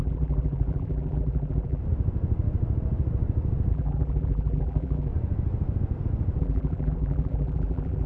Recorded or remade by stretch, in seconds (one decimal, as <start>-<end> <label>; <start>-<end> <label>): 0.0-1.8 remade; 1.8-3.7 recorded; 3.7-5.1 remade; 5.1-6.4 recorded; 6.4-8.1 remade